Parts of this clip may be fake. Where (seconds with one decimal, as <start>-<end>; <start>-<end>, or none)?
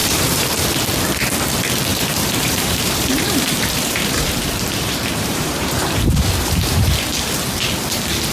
0.0-0.7; 1.9-6.9